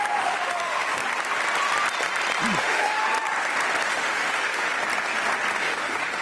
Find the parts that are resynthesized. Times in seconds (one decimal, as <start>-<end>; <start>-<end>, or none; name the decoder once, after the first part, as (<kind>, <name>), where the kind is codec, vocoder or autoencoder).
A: 0.0-1.0 (autoencoder, DAC-VAE); 2.6-3.0; 3.9-4.7; 5.6-6.2